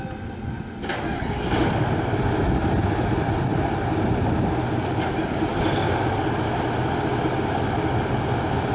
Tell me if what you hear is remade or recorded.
recorded